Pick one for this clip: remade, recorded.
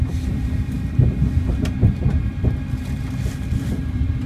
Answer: recorded